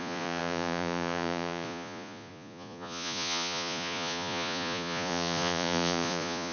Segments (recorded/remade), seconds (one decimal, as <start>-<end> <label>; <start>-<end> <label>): 0.0-6.5 remade